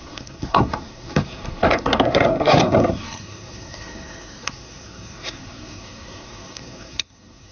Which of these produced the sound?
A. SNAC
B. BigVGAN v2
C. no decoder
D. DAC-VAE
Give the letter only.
A